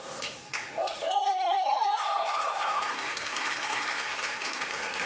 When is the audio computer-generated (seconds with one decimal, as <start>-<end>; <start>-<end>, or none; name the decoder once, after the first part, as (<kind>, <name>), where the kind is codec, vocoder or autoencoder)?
0.0-5.1 (codec, SNAC)